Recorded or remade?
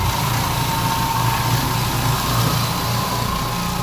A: recorded